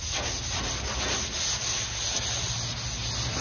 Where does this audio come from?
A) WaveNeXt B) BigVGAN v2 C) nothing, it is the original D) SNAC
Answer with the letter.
C